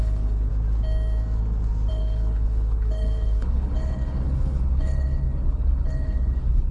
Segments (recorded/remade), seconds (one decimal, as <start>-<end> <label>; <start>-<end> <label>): 0.0-0.5 remade; 0.5-1.9 recorded; 1.9-6.7 remade